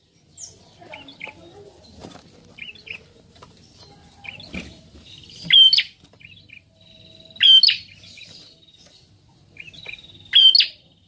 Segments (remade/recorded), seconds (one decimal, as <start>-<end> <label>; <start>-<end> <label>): 0.0-11.1 recorded